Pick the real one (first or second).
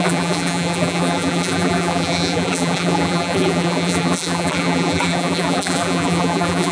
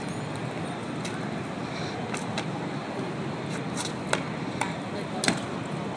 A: second